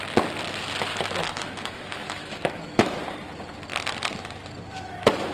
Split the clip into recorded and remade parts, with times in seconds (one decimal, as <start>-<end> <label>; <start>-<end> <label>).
0.0-1.2 recorded; 1.2-3.0 remade; 3.0-5.3 recorded